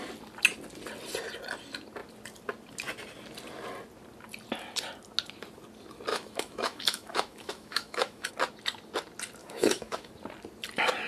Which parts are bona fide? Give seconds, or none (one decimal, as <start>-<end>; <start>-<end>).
0.0-6.1; 8.3-9.4; 10.1-11.1